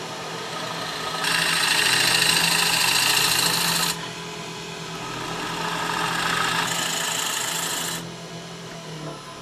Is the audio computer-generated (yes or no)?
no